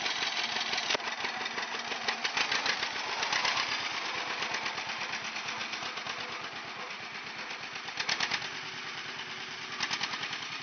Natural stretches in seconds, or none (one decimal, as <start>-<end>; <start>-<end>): 0.0-10.6